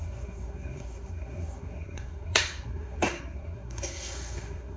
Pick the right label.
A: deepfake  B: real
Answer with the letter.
A